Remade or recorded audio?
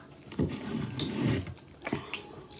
recorded